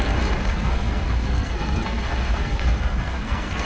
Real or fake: fake